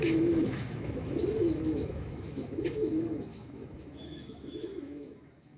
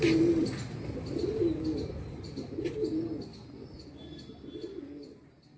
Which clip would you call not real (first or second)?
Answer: first